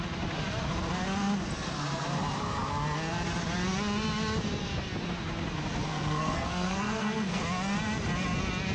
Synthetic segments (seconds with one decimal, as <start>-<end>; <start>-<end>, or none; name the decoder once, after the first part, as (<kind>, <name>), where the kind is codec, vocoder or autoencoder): 5.9-7.4 (codec, SNAC)